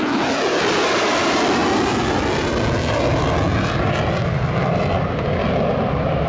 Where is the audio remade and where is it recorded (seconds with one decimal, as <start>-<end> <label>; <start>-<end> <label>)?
0.0-6.3 recorded